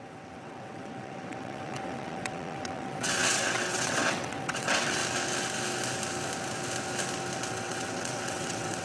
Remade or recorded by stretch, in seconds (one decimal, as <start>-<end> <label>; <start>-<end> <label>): 0.0-5.0 remade; 5.0-7.5 recorded; 7.5-8.8 remade